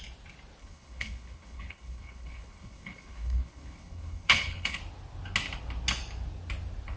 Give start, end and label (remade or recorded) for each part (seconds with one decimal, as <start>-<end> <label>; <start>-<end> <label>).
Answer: 0.0-0.6 recorded; 0.6-4.8 remade; 4.8-7.0 recorded